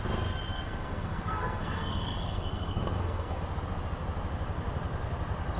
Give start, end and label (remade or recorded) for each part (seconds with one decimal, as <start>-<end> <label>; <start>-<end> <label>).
0.0-0.5 recorded; 0.5-3.4 remade; 3.4-5.6 recorded